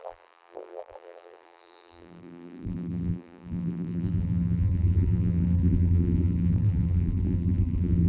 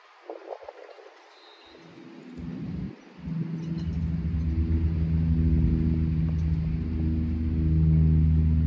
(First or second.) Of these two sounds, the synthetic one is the first